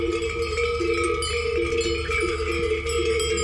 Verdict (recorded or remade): recorded